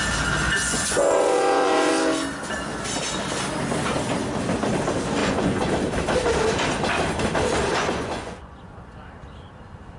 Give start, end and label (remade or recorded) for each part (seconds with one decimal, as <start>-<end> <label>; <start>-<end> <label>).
0.0-0.6 recorded; 0.6-1.9 remade; 1.9-5.2 recorded; 5.2-5.7 remade; 5.7-7.8 recorded; 7.8-8.9 remade; 8.9-10.0 recorded